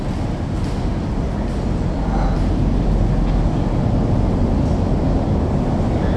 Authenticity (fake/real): real